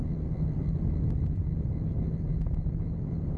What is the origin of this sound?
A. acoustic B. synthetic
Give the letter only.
A